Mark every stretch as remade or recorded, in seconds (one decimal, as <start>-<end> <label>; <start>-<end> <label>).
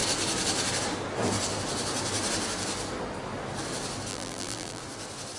0.0-4.1 recorded; 4.1-4.8 remade; 4.8-5.4 recorded